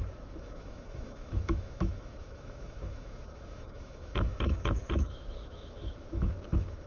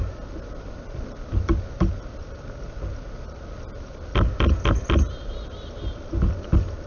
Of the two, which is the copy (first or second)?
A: first